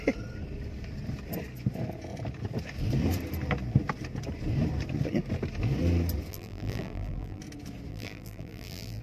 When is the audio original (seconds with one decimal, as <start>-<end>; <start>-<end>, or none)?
0.0-6.3; 7.4-7.9